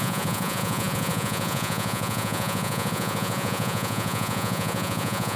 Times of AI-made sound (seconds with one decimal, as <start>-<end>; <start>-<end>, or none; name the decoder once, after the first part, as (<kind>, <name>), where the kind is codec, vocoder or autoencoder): 0.0-5.4 (vocoder, Vocos)